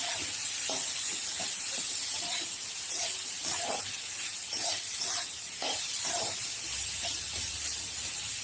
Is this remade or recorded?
remade